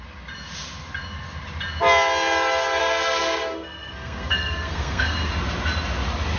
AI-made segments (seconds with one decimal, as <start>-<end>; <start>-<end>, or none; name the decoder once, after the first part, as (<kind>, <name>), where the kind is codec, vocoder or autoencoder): 2.8-5.3 (codec, SNAC)